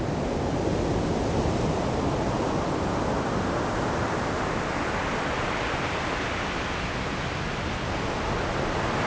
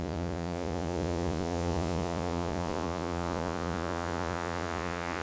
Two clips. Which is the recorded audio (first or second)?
first